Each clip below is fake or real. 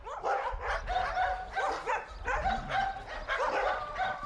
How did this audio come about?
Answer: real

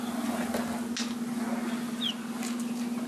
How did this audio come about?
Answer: real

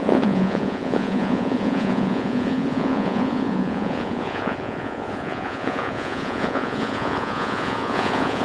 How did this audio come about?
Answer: fake